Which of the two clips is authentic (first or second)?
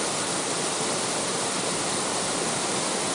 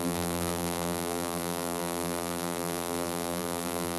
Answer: first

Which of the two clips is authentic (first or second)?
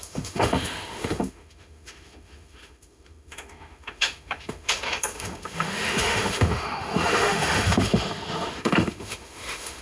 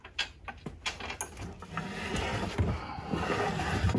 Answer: second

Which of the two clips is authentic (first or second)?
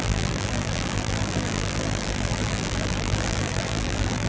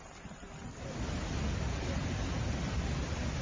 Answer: second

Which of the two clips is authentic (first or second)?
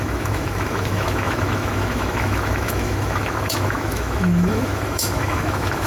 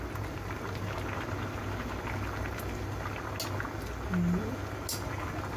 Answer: second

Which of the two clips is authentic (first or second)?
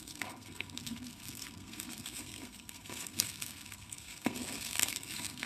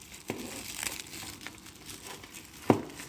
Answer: second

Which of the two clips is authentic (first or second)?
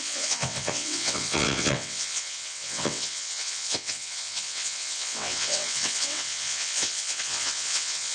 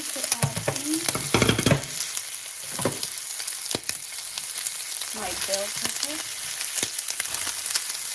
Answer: second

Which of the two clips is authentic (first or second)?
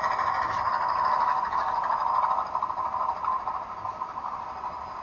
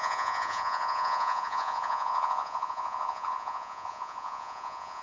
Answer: first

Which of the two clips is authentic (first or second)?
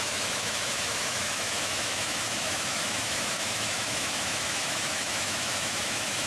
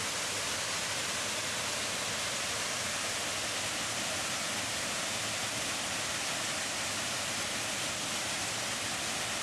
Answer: second